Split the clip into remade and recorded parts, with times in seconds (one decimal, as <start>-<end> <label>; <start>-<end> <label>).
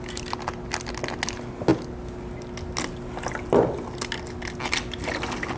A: 0.0-5.6 recorded